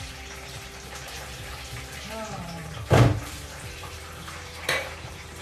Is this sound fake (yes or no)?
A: yes